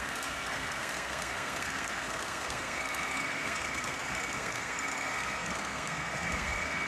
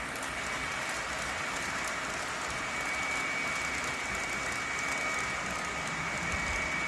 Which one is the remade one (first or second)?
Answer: first